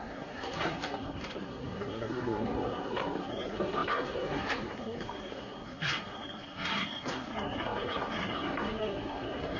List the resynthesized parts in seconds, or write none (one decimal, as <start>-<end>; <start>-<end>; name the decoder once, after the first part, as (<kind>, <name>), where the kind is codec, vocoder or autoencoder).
0.0-9.6 (codec, SNAC)